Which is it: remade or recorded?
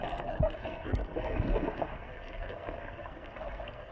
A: remade